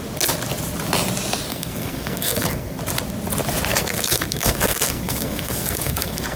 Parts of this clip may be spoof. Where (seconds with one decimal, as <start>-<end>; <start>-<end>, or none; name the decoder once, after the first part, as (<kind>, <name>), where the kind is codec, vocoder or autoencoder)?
1.5-2.8 (codec, SNAC); 3.7-6.4